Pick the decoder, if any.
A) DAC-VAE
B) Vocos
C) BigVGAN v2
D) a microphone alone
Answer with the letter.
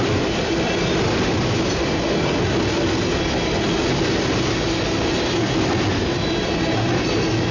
D